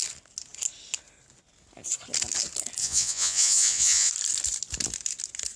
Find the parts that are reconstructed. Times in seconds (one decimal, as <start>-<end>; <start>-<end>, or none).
2.8-4.1